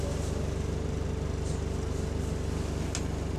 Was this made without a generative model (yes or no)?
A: yes